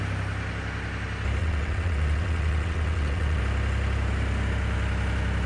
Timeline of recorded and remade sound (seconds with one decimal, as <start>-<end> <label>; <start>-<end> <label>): 0.0-1.4 recorded; 1.4-3.4 remade; 3.4-5.5 recorded